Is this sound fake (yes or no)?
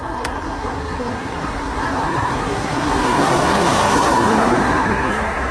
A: yes